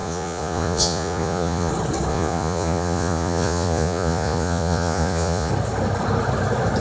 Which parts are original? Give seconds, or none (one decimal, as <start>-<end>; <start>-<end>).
1.7-2.1; 5.5-6.8